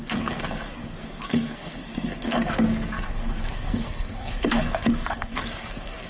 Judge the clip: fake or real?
fake